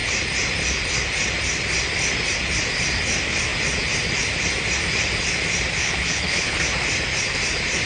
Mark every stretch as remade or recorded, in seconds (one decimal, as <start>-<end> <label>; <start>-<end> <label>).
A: 0.0-5.8 recorded; 5.8-6.6 remade; 6.6-7.9 recorded